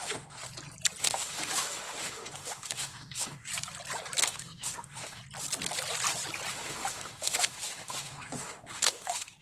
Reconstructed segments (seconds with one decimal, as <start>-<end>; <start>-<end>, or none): 0.0-0.4; 1.0-3.5; 4.2-5.2; 6.5-9.4